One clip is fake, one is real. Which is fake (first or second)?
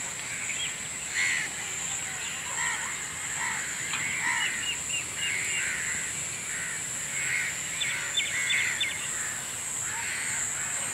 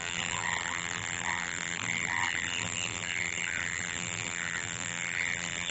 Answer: second